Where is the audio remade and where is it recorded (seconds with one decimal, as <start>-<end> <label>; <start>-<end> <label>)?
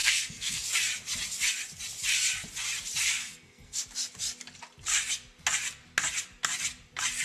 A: 0.0-0.6 remade; 0.6-3.2 recorded; 3.2-3.8 remade; 3.8-7.2 recorded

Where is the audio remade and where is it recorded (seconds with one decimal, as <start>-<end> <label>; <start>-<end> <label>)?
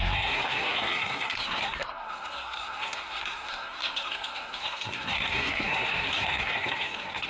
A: 0.0-7.3 remade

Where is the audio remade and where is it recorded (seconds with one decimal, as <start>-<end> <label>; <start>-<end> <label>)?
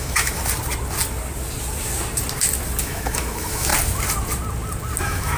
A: 0.0-0.4 remade; 0.4-2.8 recorded; 2.8-3.7 remade; 3.7-5.0 recorded; 5.0-5.4 remade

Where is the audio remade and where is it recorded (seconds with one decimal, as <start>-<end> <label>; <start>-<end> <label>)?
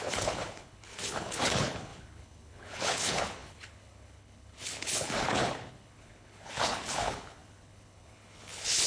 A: 0.0-8.9 remade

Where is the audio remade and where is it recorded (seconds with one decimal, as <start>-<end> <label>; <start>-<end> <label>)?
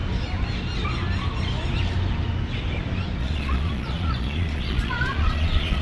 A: 0.0-3.2 recorded; 3.2-5.8 remade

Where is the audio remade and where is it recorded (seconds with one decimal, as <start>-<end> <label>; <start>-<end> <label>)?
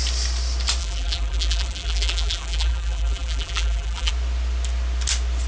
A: 0.0-0.8 recorded; 0.8-4.1 remade; 4.1-5.5 recorded